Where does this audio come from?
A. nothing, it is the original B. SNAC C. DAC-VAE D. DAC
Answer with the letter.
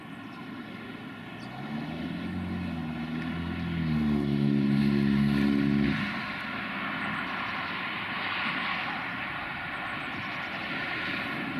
A